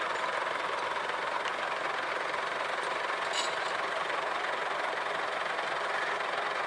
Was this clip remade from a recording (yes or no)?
no